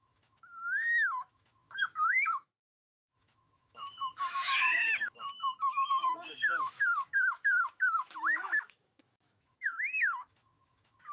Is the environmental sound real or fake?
fake